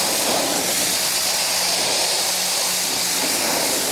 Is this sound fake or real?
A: real